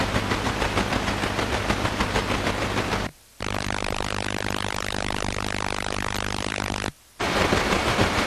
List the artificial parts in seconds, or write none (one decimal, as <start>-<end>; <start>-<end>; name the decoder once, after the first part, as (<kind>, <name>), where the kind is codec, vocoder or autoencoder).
none